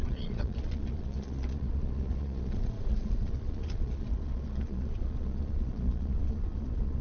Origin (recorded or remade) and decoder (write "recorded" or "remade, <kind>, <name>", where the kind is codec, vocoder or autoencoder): remade, vocoder, Vocos